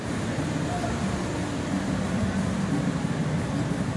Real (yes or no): yes